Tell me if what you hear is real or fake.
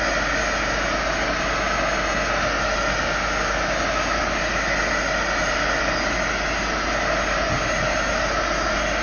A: real